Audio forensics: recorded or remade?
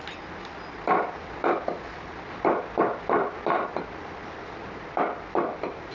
recorded